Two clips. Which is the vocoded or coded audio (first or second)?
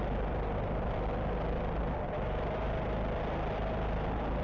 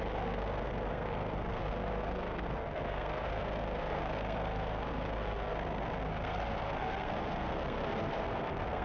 second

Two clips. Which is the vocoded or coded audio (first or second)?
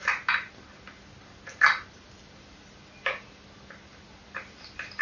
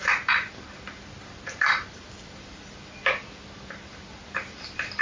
second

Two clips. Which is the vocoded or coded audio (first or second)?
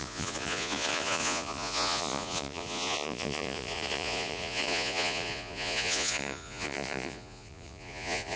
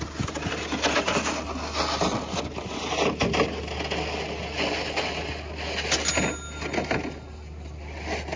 first